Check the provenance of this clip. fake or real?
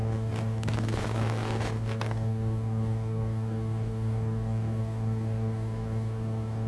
fake